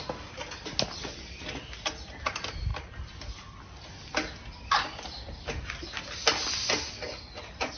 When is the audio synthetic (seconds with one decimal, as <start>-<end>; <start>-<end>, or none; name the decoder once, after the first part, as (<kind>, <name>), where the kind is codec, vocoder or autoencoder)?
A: none